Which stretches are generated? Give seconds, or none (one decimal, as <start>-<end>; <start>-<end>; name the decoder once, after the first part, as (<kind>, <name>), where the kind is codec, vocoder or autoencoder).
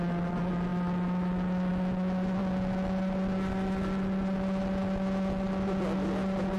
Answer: none